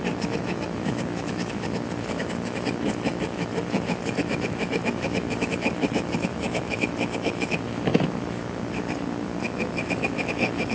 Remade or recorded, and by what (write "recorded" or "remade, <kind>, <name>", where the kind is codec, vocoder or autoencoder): remade, autoencoder, DAC-VAE